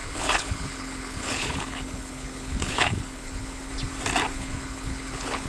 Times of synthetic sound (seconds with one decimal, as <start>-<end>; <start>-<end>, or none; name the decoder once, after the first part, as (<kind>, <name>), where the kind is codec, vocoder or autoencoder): 0.0-3.7 (codec, HILCodec); 4.3-5.5